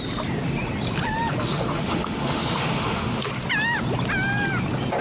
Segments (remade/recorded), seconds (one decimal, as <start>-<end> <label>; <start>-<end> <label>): 0.0-1.4 recorded; 1.4-3.3 remade; 3.3-5.0 recorded